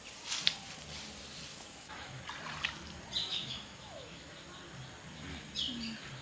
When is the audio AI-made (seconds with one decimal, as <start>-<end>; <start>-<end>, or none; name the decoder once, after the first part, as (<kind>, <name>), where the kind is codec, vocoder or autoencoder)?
1.5-2.2 (autoencoder, DAC-VAE); 3.2-4.3